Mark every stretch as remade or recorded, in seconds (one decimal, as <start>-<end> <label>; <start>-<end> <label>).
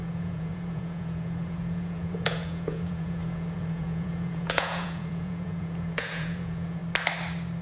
0.0-6.8 remade; 6.8-7.6 recorded